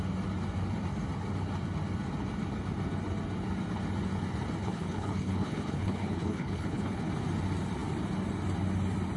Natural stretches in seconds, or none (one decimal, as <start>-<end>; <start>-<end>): 0.0-4.6; 7.1-9.2